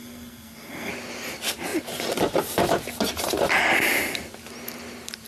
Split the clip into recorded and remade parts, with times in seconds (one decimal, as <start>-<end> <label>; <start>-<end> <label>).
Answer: 0.0-0.9 remade; 0.9-5.3 recorded